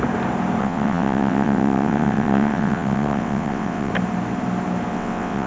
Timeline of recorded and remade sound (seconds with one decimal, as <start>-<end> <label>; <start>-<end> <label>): 0.0-0.6 recorded; 0.6-3.9 remade; 3.9-4.9 recorded; 4.9-5.5 remade